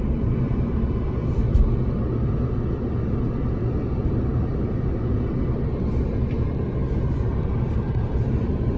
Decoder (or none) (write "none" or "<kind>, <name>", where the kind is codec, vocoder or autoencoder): none